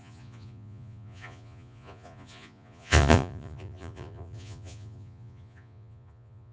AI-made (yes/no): yes